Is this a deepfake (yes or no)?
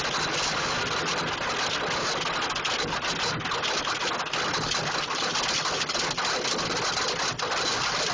no